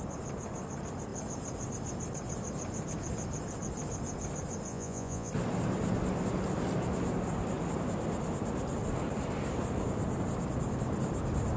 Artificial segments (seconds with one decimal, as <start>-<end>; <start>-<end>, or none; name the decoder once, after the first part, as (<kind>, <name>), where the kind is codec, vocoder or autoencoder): 4.7-5.3 (vocoder, Vocos)

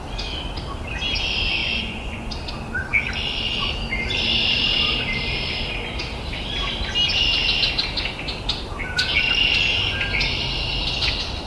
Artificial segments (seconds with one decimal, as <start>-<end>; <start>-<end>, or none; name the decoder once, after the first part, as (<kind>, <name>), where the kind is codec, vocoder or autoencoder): 1.6-2.3 (vocoder, Vocos)

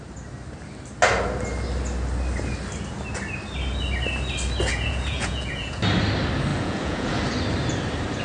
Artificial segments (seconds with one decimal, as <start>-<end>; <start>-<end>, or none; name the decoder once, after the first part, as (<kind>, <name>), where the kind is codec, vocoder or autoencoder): 4.7-5.8 (vocoder, Vocos); 6.5-7.1